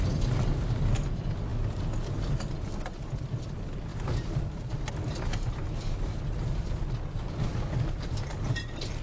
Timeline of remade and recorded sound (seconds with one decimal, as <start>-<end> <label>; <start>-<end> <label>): 0.0-9.0 recorded